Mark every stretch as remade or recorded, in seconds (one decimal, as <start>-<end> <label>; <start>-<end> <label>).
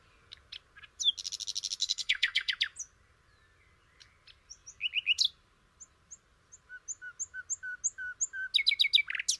0.0-1.8 recorded; 1.8-2.5 remade; 2.5-9.4 recorded